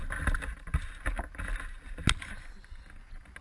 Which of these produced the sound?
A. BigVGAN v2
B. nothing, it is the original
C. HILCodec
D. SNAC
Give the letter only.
B